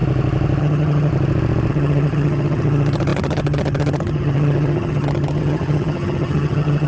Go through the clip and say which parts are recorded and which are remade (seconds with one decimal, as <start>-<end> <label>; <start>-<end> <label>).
0.0-0.6 recorded; 0.6-1.1 remade; 1.1-1.7 recorded; 1.7-6.9 remade